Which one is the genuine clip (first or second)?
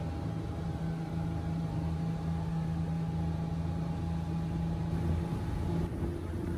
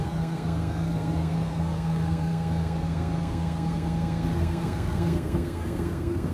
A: first